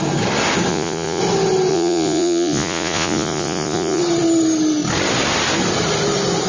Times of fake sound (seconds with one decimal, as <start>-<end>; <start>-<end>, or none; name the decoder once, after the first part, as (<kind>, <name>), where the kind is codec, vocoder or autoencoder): 0.7-1.2 (vocoder, Vocos); 1.7-4.0